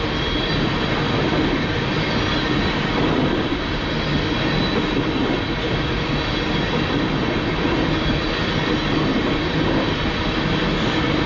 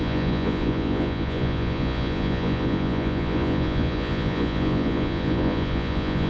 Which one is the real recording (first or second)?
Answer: first